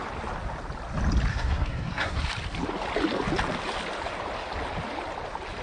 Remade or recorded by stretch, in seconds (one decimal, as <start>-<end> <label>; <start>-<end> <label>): 0.0-1.3 recorded; 1.3-2.2 remade; 2.2-5.6 recorded